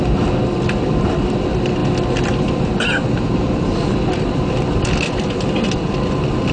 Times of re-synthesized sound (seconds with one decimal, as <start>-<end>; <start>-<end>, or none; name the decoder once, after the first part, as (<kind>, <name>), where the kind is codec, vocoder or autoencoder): none